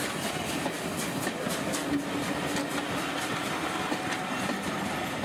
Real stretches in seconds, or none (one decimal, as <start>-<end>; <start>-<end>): 0.0-5.2